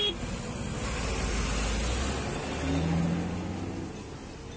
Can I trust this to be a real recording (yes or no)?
yes